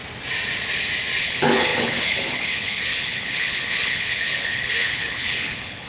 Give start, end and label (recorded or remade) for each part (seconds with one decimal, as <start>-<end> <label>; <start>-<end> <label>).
0.0-1.2 recorded; 1.2-5.9 remade